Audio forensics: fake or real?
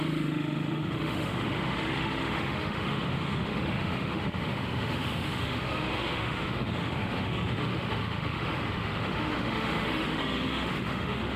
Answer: fake